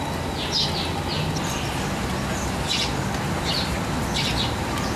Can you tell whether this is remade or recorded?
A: recorded